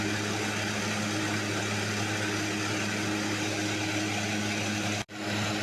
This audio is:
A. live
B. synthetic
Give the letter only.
A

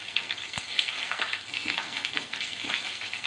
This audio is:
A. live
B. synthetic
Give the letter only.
B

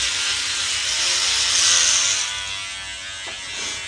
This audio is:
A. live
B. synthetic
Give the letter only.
A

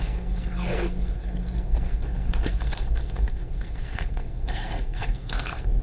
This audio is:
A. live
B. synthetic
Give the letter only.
B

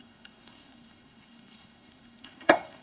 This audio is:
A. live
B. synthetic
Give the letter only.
B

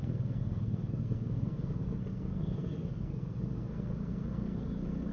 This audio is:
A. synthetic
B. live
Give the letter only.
A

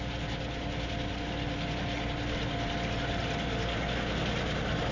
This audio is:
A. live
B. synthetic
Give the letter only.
A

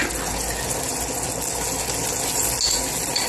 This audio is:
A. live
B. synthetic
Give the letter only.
A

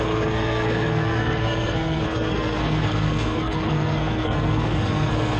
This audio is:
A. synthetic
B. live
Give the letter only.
A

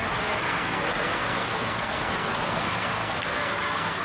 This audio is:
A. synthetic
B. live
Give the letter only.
A